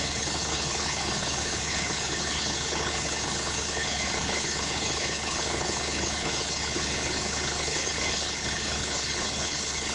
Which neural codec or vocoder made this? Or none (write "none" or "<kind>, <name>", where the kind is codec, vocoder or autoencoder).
codec, HILCodec